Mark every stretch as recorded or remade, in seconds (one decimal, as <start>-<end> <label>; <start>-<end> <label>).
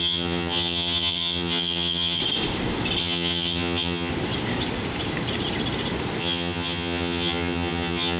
0.0-2.2 remade; 2.2-3.0 recorded; 3.0-4.1 remade; 4.1-6.2 recorded; 6.2-8.2 remade